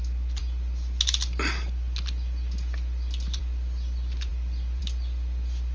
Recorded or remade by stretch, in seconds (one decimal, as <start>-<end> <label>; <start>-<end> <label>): 0.0-5.7 recorded